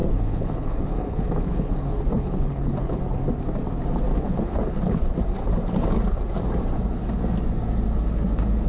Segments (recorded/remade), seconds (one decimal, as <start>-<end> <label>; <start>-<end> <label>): 0.0-3.0 remade; 3.0-4.1 recorded; 4.1-5.2 remade; 5.2-8.7 recorded